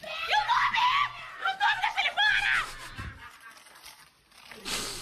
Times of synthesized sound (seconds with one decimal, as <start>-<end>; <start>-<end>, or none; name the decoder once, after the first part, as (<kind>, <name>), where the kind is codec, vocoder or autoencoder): 1.3-1.8 (codec, SNAC)